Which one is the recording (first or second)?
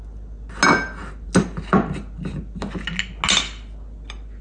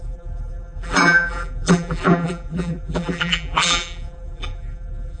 first